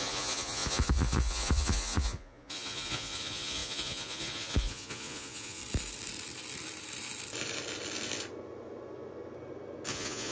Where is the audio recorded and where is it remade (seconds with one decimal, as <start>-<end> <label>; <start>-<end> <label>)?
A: 0.0-5.6 remade; 5.6-9.9 recorded; 9.9-10.3 remade